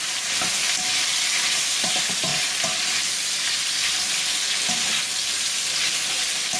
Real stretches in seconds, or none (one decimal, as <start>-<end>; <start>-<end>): 0.0-6.6